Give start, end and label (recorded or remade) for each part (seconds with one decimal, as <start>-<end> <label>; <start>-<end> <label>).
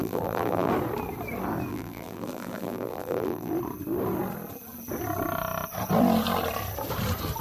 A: 0.0-0.7 remade; 0.7-1.7 recorded; 1.7-3.5 remade; 3.5-7.4 recorded